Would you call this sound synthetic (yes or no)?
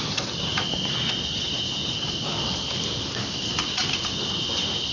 no